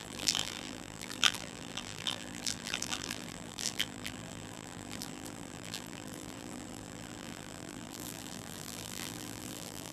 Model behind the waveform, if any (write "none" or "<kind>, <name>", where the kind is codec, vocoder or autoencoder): vocoder, BigVGAN v2